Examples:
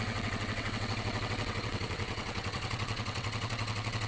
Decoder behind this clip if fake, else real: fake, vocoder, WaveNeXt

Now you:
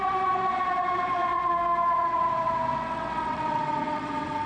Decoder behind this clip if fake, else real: fake, vocoder, WaveNeXt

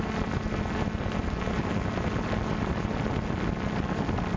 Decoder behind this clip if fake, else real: real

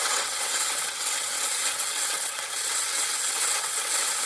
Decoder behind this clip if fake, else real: fake, vocoder, WaveNeXt